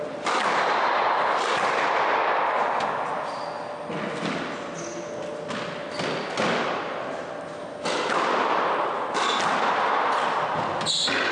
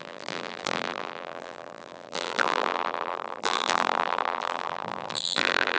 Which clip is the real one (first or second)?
first